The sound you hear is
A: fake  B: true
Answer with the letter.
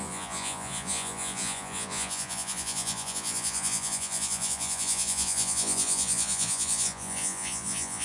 A